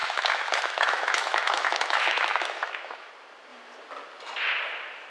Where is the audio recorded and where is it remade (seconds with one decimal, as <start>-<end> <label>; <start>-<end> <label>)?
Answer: 0.0-3.1 remade; 3.1-5.1 recorded